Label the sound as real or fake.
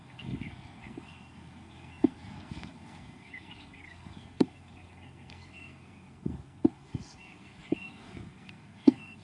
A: fake